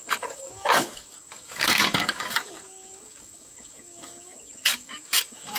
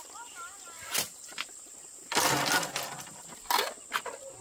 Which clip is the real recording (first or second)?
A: second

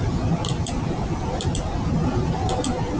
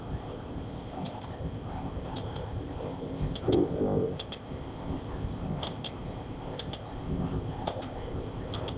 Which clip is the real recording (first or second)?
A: first